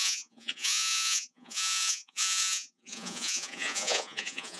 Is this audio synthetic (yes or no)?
yes